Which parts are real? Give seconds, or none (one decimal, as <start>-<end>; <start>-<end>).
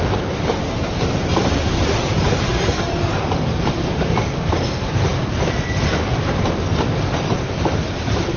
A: 2.5-4.5; 5.1-7.9